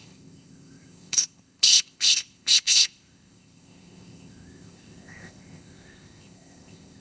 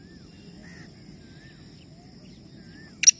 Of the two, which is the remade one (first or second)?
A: first